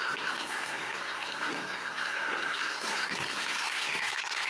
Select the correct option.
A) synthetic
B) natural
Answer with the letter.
A